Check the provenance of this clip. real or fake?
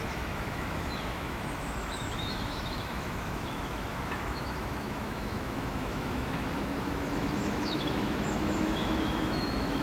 fake